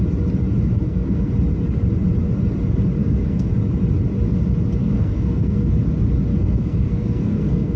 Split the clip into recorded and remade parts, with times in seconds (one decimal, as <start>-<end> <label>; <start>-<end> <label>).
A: 0.0-0.8 recorded; 0.8-1.3 remade; 1.3-3.0 recorded; 3.0-3.5 remade; 3.5-4.8 recorded; 4.8-5.7 remade; 5.7-6.3 recorded; 6.3-7.8 remade